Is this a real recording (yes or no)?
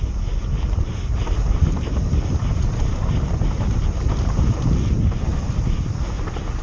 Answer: yes